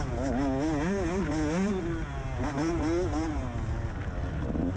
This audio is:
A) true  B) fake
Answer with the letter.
A